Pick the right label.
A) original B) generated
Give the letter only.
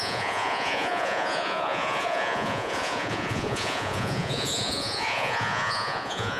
B